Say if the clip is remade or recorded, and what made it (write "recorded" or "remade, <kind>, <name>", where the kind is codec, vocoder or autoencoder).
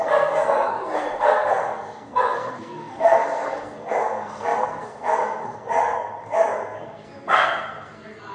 remade, codec, SNAC